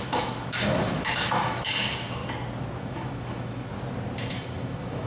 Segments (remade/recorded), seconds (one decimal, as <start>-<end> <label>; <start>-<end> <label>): 0.0-2.2 remade; 2.2-2.8 recorded; 2.8-3.7 remade; 3.7-4.3 recorded; 4.3-5.1 remade